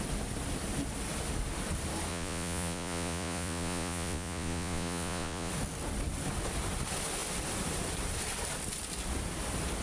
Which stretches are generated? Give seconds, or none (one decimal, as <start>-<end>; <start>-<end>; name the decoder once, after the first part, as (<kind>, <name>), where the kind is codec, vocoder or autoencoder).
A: 2.1-5.5 (vocoder, Vocos)